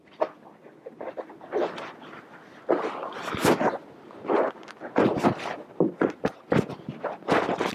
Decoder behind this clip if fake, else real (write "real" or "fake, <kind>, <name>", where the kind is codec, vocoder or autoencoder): real